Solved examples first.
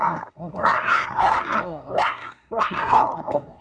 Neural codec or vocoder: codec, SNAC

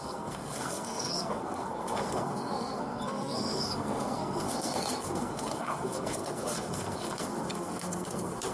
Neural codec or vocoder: codec, SNAC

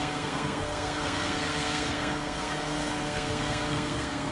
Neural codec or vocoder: codec, SNAC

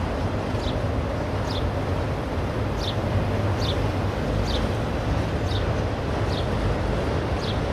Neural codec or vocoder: none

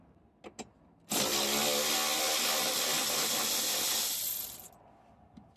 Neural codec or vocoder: none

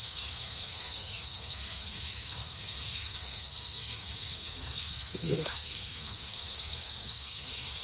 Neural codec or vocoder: codec, SNAC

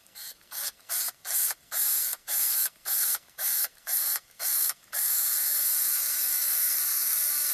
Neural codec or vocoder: codec, SNAC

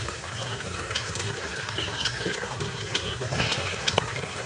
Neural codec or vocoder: codec, SNAC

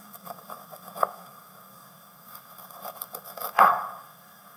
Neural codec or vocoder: codec, SNAC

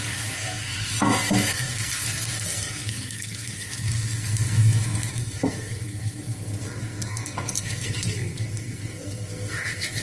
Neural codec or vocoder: codec, SNAC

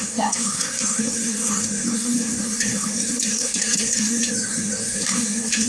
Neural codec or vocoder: codec, SNAC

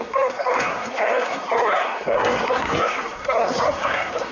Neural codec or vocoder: codec, SNAC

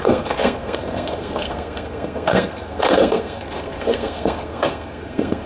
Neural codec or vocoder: codec, SNAC